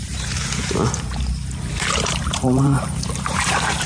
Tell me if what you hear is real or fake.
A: fake